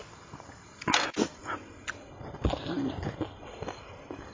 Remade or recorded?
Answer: recorded